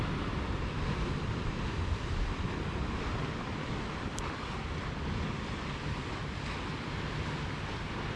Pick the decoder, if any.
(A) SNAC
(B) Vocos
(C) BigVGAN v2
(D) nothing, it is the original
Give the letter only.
D